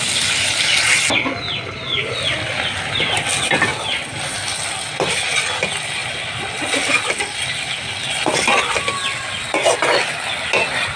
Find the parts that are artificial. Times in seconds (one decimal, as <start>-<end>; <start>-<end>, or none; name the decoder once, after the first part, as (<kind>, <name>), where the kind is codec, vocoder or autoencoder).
none